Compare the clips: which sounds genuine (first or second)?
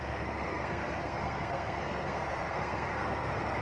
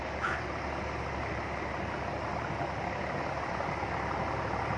second